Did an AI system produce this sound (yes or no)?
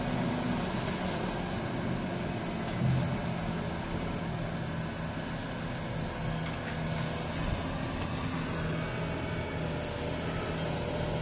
no